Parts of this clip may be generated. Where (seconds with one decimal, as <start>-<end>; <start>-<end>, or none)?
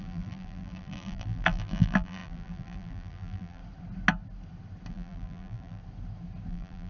0.0-3.6; 4.9-5.8; 6.5-6.9